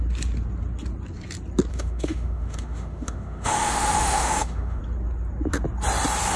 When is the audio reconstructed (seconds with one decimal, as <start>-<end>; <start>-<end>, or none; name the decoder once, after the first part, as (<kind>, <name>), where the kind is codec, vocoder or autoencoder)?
1.7-4.8 (autoencoder, DAC-VAE)